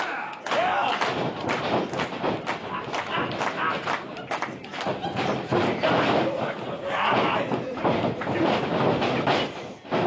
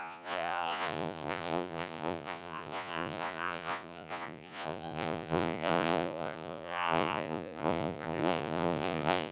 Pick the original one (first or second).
first